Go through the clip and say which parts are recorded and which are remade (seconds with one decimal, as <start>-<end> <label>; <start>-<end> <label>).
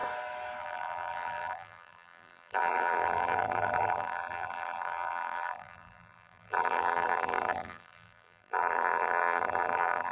0.0-0.6 recorded; 0.6-10.1 remade